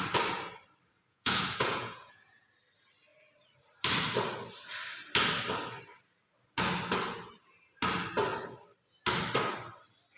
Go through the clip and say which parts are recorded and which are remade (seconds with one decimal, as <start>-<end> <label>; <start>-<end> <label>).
0.0-1.1 recorded; 1.1-2.5 remade; 2.5-10.2 recorded